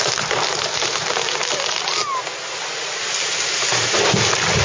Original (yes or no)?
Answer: yes